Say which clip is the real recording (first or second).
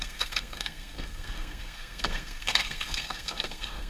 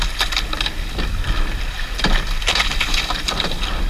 second